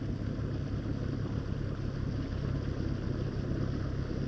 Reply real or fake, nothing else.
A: real